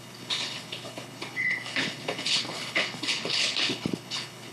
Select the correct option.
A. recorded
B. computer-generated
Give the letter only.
B